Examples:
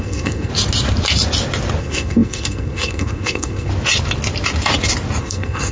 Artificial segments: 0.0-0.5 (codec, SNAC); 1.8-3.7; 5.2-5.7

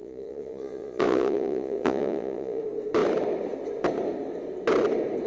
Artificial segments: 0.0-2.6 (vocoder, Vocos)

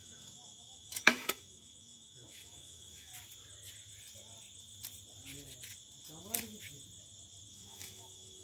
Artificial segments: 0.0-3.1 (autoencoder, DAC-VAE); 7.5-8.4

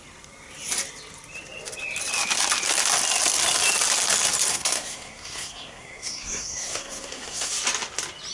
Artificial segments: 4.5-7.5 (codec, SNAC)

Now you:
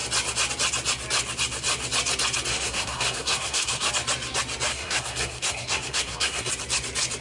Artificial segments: 2.5-3.9 (codec, SNAC); 4.7-6.5